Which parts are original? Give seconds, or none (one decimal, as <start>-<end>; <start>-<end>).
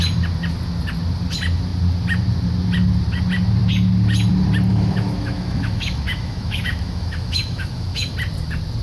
0.0-4.7; 8.1-8.8